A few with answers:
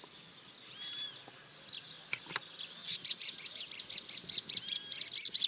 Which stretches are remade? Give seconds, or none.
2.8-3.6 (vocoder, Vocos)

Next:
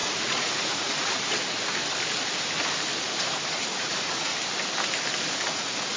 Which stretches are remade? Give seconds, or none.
0.0-1.8 (vocoder, Vocos); 3.1-4.3; 5.5-6.0

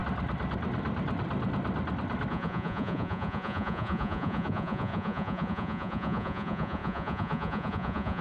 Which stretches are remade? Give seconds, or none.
2.3-8.2 (vocoder, Vocos)